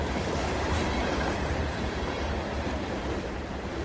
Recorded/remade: remade